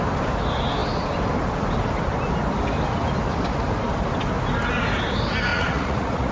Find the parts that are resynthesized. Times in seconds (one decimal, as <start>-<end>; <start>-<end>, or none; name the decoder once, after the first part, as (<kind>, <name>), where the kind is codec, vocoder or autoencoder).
5.5-6.3 (vocoder, Vocos)